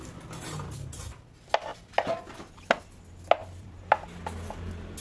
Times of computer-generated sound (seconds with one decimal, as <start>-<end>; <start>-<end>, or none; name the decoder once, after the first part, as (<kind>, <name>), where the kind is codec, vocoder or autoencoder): 3.4-3.9 (vocoder, BigVGAN v2)